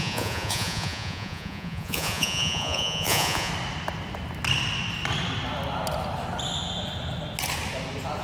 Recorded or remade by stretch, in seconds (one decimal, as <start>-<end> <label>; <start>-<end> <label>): 0.0-3.5 remade; 3.5-8.2 recorded